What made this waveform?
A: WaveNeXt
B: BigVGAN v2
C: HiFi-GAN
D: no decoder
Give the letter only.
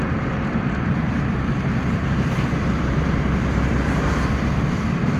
B